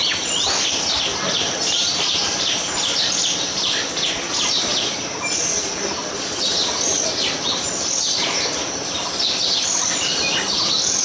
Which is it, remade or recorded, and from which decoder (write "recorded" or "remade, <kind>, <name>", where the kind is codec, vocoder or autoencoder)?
recorded